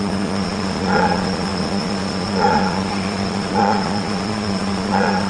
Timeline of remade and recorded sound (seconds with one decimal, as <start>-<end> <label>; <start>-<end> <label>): 0.0-5.3 remade